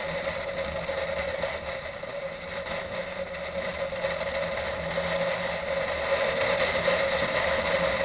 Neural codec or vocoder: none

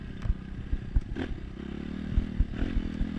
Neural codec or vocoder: none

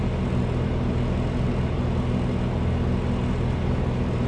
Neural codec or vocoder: none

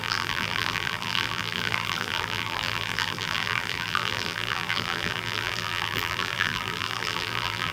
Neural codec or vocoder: vocoder, BigVGAN v2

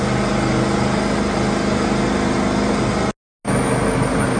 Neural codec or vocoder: none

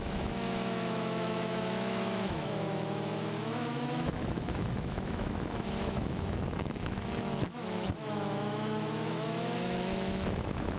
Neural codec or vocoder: autoencoder, DAC-VAE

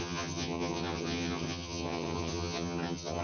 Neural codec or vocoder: vocoder, HiFi-GAN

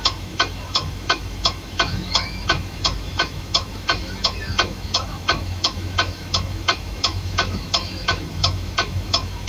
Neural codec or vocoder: autoencoder, DAC-VAE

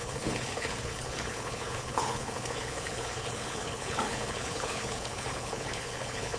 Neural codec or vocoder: codec, HILCodec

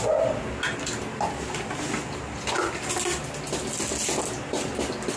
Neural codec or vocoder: none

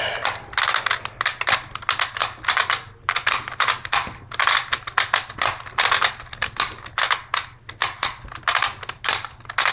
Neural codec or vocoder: none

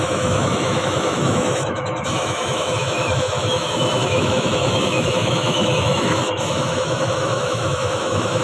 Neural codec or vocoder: autoencoder, DAC-VAE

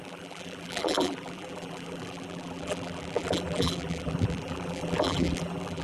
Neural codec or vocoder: vocoder, BigVGAN v2